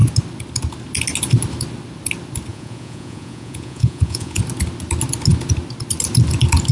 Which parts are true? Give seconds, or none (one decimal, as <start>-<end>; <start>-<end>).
0.0-2.5; 4.4-6.7